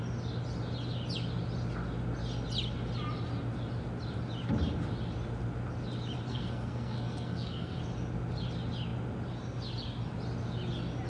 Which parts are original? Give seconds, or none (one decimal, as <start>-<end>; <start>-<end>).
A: 0.0-6.3; 7.8-11.1